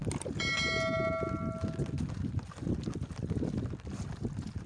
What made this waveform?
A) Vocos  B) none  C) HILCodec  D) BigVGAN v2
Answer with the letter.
B